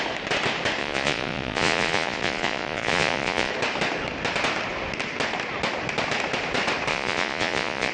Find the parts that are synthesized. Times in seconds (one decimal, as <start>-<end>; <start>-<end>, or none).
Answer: 0.8-3.5; 6.9-7.9